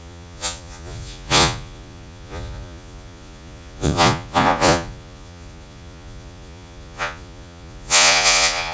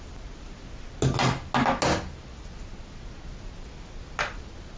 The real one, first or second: second